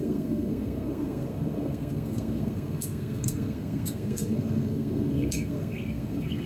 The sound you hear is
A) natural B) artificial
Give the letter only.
B